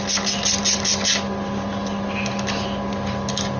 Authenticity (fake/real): real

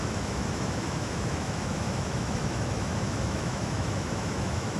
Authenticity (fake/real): fake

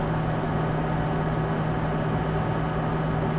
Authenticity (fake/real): real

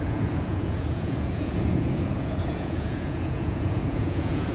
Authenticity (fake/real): fake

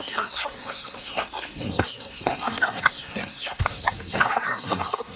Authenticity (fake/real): fake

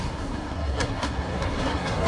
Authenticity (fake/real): fake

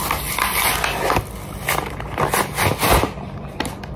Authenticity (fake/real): real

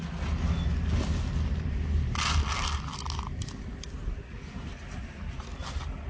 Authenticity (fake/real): real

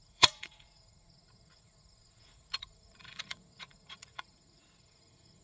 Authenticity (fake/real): fake